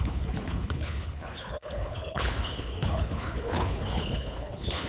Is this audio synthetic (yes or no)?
yes